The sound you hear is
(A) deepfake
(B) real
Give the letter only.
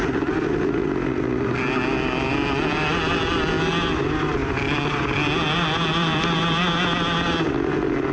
B